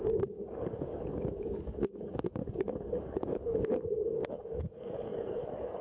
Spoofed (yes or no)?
yes